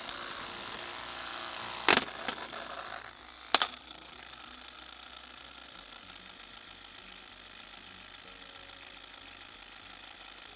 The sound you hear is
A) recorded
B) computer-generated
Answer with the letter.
A